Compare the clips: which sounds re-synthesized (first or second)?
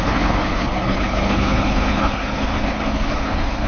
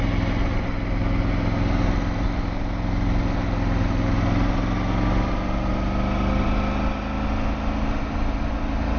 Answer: first